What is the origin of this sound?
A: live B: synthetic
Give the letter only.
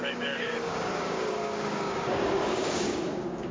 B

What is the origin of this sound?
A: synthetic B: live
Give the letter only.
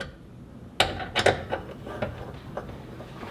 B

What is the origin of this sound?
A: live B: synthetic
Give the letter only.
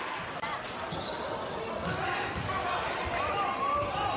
A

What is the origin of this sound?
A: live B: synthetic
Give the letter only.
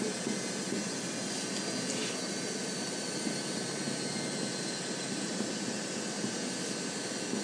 A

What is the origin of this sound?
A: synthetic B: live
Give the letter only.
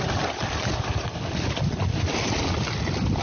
B